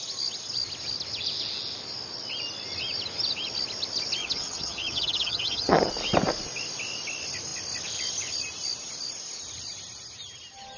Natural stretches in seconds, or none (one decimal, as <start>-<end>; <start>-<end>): 0.0-4.2; 5.9-10.8